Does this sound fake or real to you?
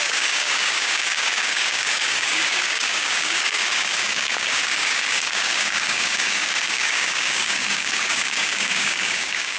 fake